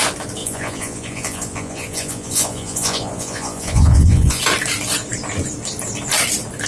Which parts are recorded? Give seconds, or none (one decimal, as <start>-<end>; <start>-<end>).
0.0-0.4; 4.4-6.7